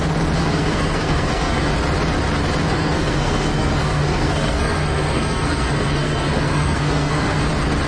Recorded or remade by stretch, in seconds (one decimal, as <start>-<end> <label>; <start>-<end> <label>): 0.0-0.4 recorded; 0.4-1.7 remade; 1.7-2.7 recorded; 2.7-7.4 remade; 7.4-7.9 recorded